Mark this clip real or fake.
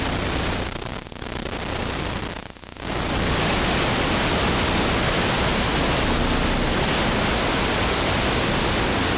real